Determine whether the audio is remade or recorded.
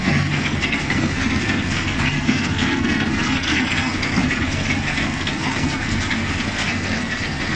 remade